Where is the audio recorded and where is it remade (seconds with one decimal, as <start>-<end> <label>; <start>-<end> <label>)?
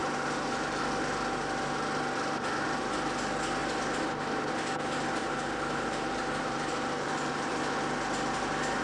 0.0-0.8 remade; 0.8-5.2 recorded; 5.2-7.5 remade; 7.5-8.8 recorded